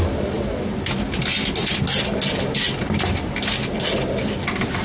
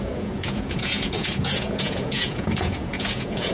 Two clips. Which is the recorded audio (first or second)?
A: first